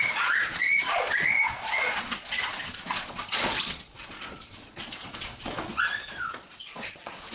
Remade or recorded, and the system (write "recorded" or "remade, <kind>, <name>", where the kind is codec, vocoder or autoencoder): remade, vocoder, Vocos